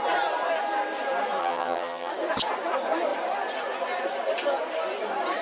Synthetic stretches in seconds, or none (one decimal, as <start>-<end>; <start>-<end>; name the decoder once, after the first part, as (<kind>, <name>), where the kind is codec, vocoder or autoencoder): 1.4-2.1 (vocoder, HiFi-GAN)

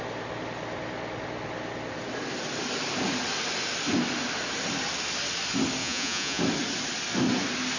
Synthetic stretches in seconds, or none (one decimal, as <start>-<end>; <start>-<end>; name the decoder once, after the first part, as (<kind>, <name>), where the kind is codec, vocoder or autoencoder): 5.8-6.4 (vocoder, Vocos)

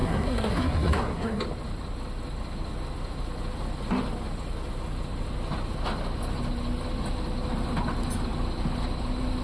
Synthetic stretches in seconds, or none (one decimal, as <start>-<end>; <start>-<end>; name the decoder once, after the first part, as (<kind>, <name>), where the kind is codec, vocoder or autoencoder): 0.0-1.4 (codec, SNAC)

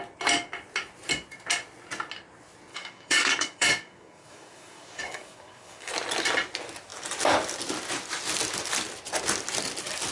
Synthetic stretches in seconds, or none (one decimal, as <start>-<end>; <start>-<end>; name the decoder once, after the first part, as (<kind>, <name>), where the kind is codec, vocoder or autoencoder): 2.7-5.9 (codec, DAC)

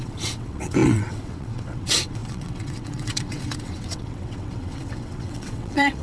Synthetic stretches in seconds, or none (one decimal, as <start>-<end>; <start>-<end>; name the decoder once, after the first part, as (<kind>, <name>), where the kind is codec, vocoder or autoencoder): 0.0-6.0 (vocoder, WaveNeXt)

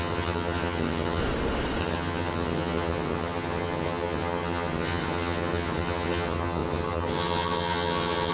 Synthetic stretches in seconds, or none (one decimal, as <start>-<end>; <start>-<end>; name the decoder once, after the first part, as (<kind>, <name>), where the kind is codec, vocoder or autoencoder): 0.0-1.2 (vocoder, HiFi-GAN); 1.8-8.3